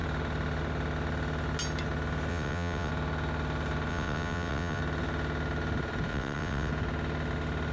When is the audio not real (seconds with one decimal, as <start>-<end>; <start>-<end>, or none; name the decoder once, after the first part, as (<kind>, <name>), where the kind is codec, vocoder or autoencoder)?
2.3-2.9 (vocoder, WaveNeXt); 3.9-4.8; 6.1-6.7